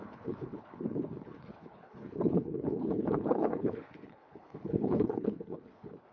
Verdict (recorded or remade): remade